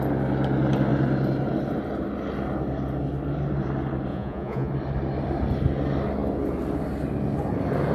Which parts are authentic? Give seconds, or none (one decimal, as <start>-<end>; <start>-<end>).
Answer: 0.0-4.1; 4.7-7.9